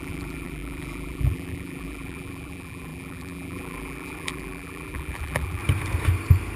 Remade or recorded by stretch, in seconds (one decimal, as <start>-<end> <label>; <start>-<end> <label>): 0.0-5.6 remade; 5.6-6.6 recorded